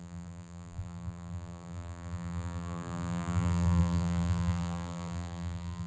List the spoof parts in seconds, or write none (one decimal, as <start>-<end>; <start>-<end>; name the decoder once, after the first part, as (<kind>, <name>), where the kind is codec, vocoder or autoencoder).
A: 0.0-5.9 (vocoder, BigVGAN v2)